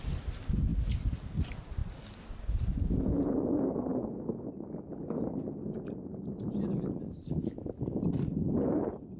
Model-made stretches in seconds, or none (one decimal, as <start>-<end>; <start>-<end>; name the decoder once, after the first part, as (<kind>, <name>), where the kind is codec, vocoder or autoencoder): none